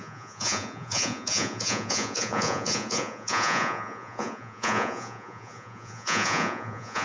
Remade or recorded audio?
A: remade